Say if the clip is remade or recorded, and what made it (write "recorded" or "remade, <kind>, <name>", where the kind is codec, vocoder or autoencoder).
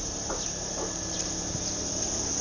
recorded